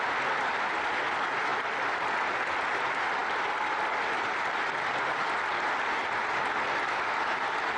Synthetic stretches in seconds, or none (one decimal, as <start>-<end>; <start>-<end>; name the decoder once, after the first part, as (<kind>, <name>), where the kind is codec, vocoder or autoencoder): none

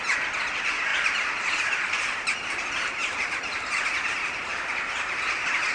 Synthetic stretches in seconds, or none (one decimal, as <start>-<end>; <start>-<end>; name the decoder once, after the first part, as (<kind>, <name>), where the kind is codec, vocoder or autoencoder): 0.9-1.7 (vocoder, BigVGAN v2)

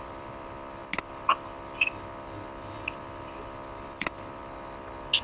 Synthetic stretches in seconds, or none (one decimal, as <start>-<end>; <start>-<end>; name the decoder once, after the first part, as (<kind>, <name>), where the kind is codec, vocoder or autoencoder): 0.0-0.8 (vocoder, BigVGAN v2); 2.6-4.4

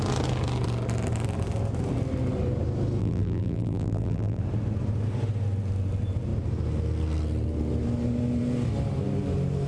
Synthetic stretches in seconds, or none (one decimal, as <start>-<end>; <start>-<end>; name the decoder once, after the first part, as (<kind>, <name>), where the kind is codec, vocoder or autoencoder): 3.0-4.4 (vocoder, BigVGAN v2)